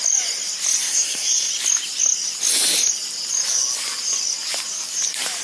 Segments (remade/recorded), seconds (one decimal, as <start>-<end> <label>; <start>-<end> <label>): 0.0-0.8 recorded; 0.8-1.5 remade; 1.5-5.4 recorded